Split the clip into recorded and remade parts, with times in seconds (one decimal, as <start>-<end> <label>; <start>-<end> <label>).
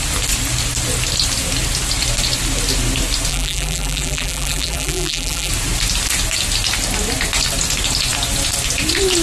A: 0.0-3.3 recorded; 3.3-5.5 remade; 5.5-9.2 recorded